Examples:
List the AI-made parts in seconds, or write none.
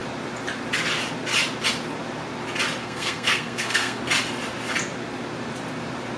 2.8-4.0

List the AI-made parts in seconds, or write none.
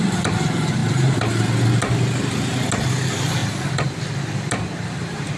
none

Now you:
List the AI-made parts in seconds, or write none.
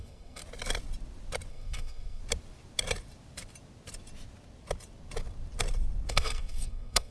0.0-0.4; 1.5-2.2; 6.1-7.1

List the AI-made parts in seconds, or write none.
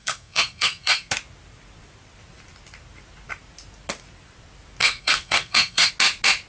0.0-1.1; 4.8-5.9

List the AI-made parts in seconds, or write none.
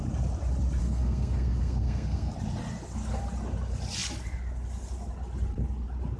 0.8-2.3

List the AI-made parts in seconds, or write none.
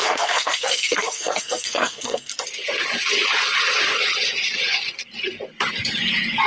0.0-2.3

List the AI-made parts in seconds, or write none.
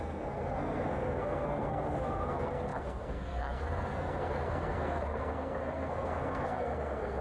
0.0-7.2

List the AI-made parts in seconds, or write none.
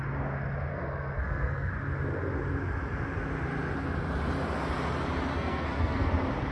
0.7-1.7; 5.3-6.1